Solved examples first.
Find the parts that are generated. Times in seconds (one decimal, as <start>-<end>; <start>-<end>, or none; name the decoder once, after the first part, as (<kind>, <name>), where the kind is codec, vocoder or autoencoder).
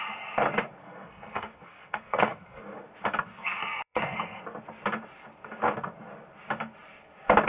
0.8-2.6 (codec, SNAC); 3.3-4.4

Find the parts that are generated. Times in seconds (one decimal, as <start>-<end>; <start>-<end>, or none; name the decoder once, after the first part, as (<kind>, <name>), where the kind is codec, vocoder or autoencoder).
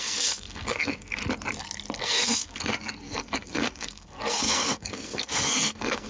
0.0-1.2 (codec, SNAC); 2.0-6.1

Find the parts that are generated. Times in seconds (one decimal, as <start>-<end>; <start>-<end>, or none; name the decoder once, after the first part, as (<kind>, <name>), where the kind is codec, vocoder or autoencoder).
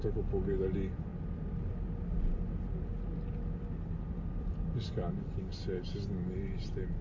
none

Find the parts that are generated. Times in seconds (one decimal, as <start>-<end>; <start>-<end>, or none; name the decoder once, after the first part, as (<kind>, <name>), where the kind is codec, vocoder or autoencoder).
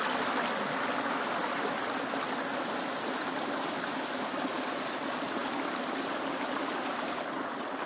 none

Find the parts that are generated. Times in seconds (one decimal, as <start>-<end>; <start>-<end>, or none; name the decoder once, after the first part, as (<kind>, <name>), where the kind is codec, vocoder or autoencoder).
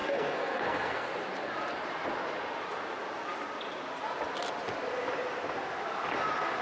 0.0-1.1 (codec, SNAC)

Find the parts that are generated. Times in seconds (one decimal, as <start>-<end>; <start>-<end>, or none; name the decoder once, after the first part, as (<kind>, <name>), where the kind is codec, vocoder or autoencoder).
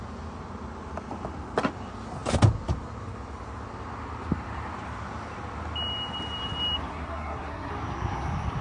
6.9-7.7 (codec, SNAC)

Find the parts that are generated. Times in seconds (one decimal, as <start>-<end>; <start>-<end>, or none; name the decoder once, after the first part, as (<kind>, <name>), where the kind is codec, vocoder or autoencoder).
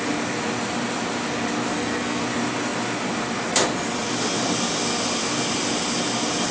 1.7-2.2 (codec, SNAC)